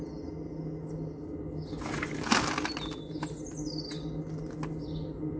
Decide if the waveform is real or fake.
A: real